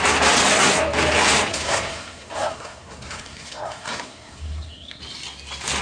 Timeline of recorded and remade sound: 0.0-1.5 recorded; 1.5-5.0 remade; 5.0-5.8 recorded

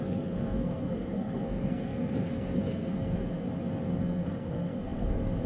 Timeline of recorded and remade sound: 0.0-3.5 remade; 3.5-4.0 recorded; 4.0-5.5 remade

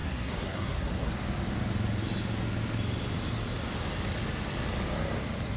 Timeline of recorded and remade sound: 0.0-1.1 remade; 1.1-5.6 recorded

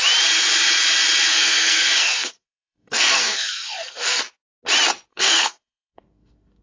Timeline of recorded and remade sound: 0.0-1.3 recorded; 1.3-4.2 remade; 4.2-5.1 recorded; 5.1-6.6 remade

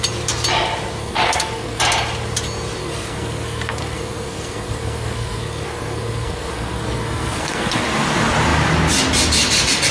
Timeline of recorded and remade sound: 0.0-1.0 recorded; 1.0-1.8 remade; 1.8-2.8 recorded; 2.8-7.8 remade; 7.8-9.9 recorded

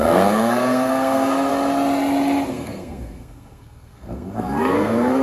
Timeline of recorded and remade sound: 0.0-1.5 remade; 1.5-2.5 recorded; 2.5-5.2 remade

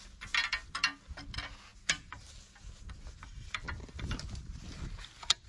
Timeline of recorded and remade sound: 0.0-5.5 recorded

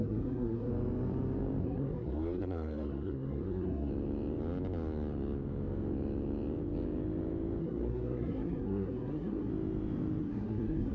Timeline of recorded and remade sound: 0.0-0.7 remade; 0.7-1.6 recorded; 1.6-3.9 remade; 3.9-7.6 recorded; 7.6-9.5 remade; 9.5-10.2 recorded; 10.2-10.9 remade